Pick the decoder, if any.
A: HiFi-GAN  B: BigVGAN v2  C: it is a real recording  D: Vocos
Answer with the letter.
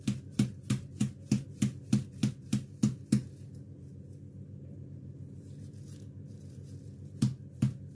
B